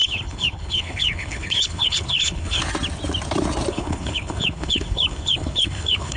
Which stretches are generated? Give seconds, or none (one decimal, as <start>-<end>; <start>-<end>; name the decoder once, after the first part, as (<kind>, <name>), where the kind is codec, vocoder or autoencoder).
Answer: 0.0-2.6 (codec, HILCodec); 3.7-6.2